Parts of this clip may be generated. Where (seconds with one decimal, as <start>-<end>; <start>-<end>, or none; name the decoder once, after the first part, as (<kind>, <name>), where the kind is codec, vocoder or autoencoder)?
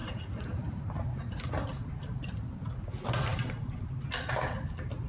0.0-0.8 (vocoder, Vocos)